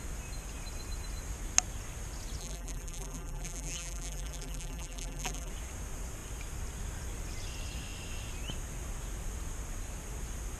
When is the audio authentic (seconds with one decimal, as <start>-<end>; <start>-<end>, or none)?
0.0-2.4; 5.5-10.6